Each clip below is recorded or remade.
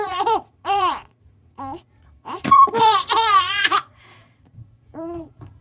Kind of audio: remade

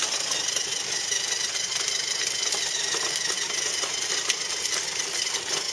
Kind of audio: recorded